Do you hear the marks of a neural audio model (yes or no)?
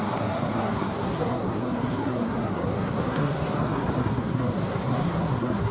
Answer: yes